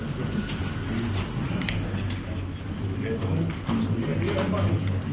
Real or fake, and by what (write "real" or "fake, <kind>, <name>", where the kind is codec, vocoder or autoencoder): real